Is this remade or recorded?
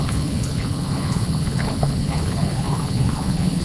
remade